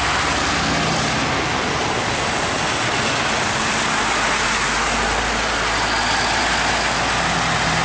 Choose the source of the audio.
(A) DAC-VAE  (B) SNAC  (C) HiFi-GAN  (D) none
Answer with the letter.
D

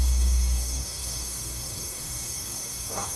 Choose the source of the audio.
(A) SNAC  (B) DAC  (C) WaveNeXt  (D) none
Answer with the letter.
B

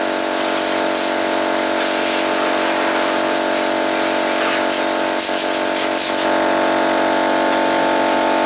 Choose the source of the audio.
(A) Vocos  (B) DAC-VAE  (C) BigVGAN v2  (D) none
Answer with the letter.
D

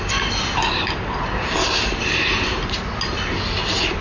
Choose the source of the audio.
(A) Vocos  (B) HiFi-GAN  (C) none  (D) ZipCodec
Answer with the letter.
C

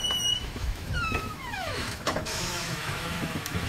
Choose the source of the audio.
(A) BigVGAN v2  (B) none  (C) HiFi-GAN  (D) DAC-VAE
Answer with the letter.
D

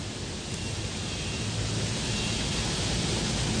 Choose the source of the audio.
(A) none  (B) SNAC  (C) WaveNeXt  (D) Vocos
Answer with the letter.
A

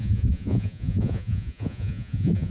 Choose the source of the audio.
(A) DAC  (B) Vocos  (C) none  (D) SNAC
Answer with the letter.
B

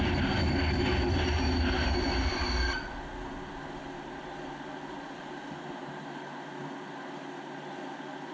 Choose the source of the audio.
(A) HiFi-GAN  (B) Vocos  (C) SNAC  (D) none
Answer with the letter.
D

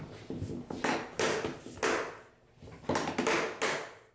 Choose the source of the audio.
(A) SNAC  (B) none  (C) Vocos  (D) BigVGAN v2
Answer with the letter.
B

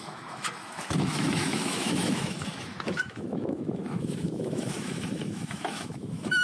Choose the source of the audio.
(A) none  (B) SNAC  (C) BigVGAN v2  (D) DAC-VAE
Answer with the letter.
D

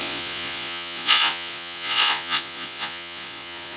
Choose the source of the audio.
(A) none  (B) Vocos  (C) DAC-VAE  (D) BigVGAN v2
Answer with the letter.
B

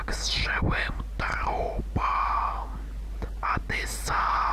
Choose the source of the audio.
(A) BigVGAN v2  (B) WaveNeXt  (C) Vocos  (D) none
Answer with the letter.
D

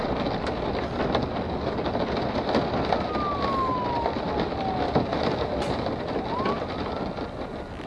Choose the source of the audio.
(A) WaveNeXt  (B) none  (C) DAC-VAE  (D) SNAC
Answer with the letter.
B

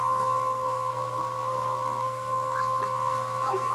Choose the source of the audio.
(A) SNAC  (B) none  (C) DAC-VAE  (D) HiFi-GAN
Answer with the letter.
A